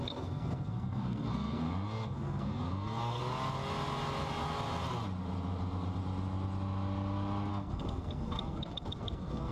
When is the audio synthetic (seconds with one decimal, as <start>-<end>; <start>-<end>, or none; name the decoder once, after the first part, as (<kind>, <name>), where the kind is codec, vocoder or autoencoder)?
0.0-3.2 (codec, SNAC); 7.5-9.5